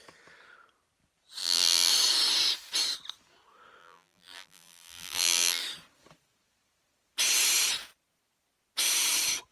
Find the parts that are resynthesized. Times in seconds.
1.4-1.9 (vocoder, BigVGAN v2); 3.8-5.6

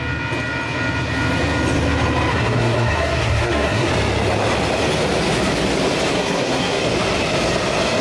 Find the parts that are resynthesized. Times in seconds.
2.3-3.9 (codec, SNAC); 6.1-6.8

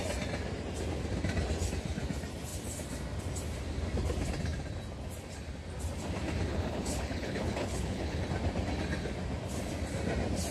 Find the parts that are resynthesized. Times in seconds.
6.5-8.2 (codec, HILCodec)

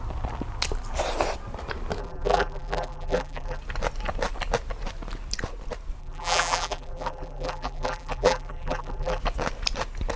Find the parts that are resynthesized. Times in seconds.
2.0-3.6 (vocoder, BigVGAN v2); 6.0-9.2

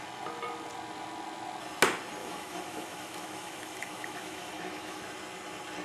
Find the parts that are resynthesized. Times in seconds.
2.2-5.0 (autoencoder, DAC-VAE)

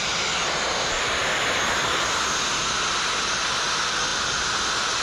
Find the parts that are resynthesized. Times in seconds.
1.2-2.4 (vocoder, BigVGAN v2); 4.1-4.6